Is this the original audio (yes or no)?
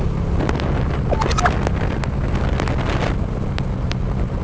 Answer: yes